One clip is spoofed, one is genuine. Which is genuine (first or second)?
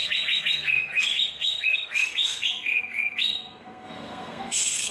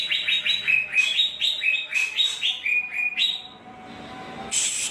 second